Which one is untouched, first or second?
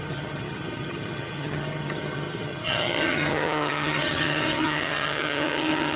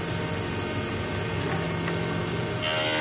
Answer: second